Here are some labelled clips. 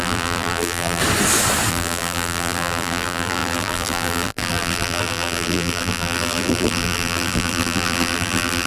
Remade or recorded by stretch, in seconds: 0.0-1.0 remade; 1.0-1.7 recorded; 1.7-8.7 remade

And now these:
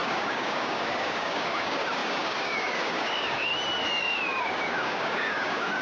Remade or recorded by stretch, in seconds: 0.0-3.5 remade; 3.5-4.0 recorded; 4.0-5.8 remade

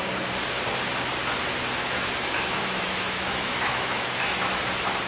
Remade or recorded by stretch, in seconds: 0.0-1.8 recorded; 1.8-4.6 remade; 4.6-5.1 recorded

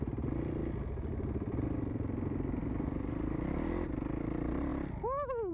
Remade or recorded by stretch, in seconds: 0.0-5.5 recorded

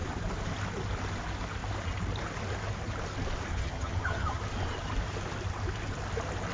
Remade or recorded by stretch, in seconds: 0.0-3.5 recorded; 3.5-4.4 remade; 4.4-6.5 recorded

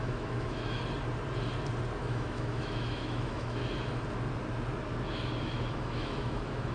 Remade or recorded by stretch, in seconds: 0.0-0.8 remade; 0.8-2.0 recorded; 2.0-3.6 remade; 3.6-5.4 recorded; 5.4-6.7 remade

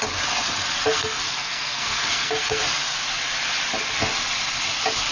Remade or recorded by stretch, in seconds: 0.0-0.9 recorded; 0.9-2.6 remade; 2.6-5.1 recorded

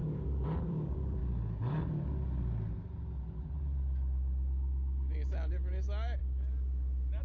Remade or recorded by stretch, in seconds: 0.0-0.7 recorded; 0.7-1.2 remade; 1.2-5.5 recorded; 5.5-7.2 remade